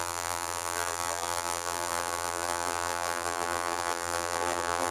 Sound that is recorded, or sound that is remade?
remade